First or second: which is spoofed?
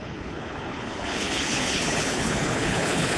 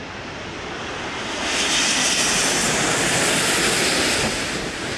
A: first